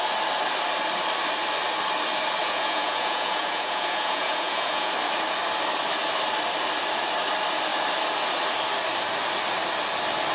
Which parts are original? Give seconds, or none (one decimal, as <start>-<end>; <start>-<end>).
0.0-2.4; 4.9-10.3